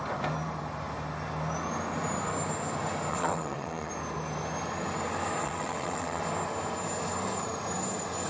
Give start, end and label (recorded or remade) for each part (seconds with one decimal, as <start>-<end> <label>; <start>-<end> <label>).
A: 0.0-3.1 recorded; 3.1-3.9 remade; 3.9-5.4 recorded; 5.4-6.2 remade; 6.2-8.3 recorded